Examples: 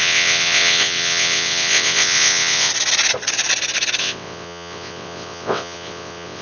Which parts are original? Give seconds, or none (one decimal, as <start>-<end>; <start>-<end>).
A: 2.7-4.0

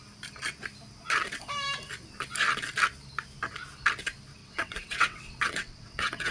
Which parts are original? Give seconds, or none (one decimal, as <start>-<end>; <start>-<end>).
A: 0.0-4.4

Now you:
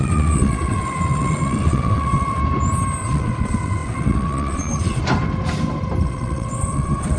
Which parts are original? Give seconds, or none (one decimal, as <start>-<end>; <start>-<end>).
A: 2.4-3.0; 5.0-6.0